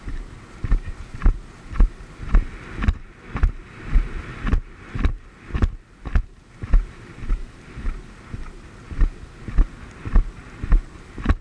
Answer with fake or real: real